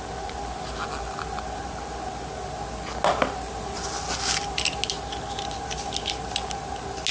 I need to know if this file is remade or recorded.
recorded